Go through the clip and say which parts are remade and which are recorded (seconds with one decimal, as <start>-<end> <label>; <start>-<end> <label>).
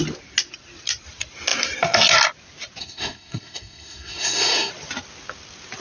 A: 0.0-2.8 recorded; 2.8-4.7 remade; 4.7-5.8 recorded